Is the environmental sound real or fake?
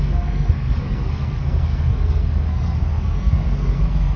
fake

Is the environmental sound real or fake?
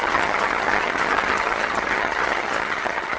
fake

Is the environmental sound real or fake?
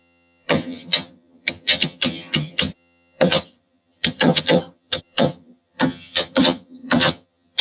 fake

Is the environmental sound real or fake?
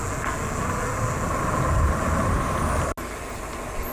real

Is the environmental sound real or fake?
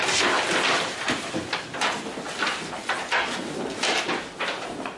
real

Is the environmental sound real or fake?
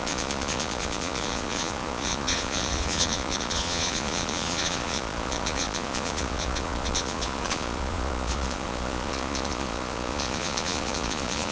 fake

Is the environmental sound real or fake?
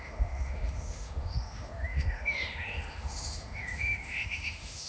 fake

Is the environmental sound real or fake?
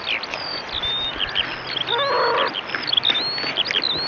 real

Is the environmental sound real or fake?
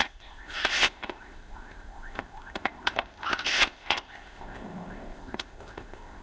fake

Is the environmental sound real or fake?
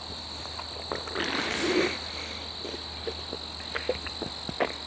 real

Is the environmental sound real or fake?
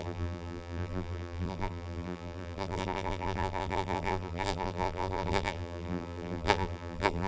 fake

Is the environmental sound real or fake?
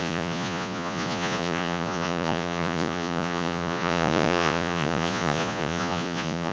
fake